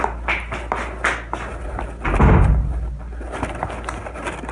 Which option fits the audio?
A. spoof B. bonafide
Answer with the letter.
B